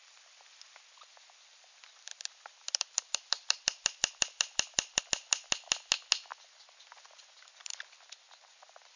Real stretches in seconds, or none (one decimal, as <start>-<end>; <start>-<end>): 0.0-2.1; 5.0-9.0